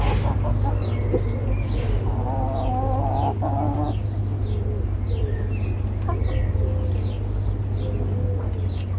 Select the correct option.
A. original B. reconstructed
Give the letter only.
A